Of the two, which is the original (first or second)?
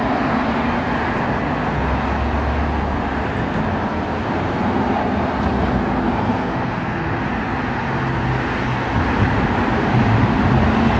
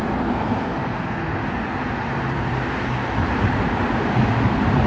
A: first